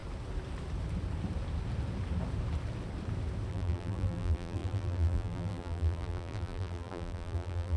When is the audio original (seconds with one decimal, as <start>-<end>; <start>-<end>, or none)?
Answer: 0.0-3.5